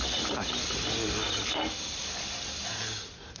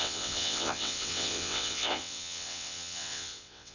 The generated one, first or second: second